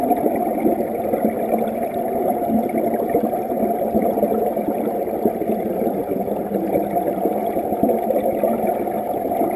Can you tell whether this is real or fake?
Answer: fake